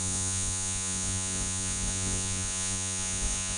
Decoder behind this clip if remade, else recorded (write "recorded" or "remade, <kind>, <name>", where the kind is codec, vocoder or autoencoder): remade, vocoder, Vocos